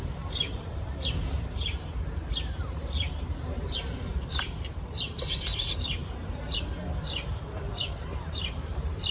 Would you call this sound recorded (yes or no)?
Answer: no